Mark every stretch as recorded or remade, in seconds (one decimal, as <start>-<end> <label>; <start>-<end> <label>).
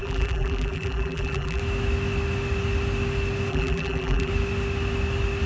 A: 0.0-1.6 remade; 1.6-3.5 recorded; 3.5-4.3 remade; 4.3-5.5 recorded